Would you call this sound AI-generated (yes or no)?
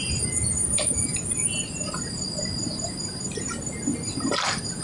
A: no